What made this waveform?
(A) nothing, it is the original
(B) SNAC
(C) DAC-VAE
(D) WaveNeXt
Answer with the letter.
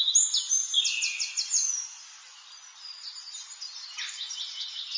A